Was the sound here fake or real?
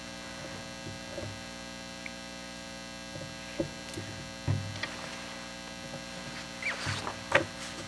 real